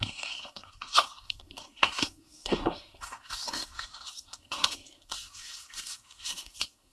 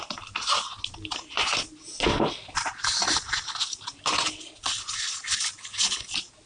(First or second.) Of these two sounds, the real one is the second